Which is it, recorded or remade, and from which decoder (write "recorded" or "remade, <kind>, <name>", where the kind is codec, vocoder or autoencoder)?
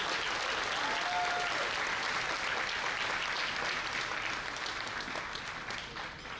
recorded